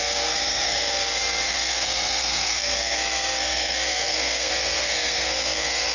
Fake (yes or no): yes